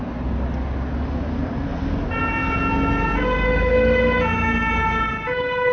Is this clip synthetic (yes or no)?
no